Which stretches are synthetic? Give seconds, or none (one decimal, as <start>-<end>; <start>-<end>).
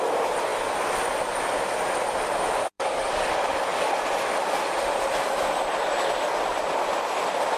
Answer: 2.6-3.3